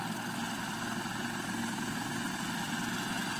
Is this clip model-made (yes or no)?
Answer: no